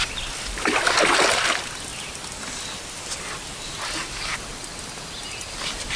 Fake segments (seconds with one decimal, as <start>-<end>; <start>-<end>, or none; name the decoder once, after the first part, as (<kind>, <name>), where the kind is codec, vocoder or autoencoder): none